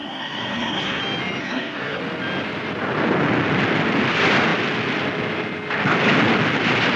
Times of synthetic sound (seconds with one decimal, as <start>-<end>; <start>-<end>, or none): 0.0-1.0; 1.4-2.0